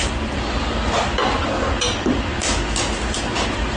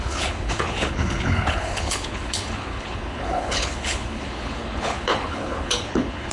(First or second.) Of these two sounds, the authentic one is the first